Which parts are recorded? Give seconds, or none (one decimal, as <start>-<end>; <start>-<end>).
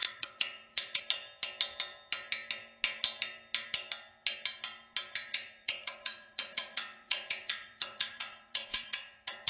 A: 1.0-5.3